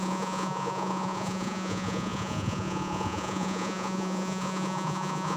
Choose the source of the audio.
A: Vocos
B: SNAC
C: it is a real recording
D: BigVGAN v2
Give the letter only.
A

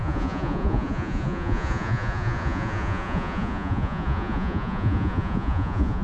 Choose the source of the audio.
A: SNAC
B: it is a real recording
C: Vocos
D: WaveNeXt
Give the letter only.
C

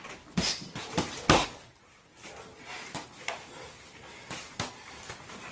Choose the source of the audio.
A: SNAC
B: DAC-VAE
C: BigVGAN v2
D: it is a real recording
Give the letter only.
D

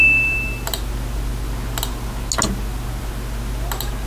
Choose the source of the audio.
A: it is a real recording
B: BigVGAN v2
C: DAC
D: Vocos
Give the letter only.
A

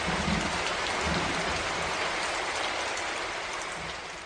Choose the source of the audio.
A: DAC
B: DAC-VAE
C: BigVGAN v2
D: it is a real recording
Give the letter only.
D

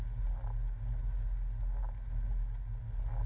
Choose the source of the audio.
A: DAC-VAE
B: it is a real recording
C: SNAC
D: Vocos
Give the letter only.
B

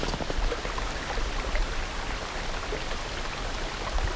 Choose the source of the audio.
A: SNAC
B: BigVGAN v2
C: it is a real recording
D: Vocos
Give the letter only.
C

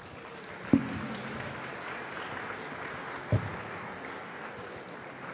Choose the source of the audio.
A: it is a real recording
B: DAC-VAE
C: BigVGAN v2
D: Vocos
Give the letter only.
A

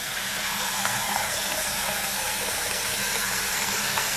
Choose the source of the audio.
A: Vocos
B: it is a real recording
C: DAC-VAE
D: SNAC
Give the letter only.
D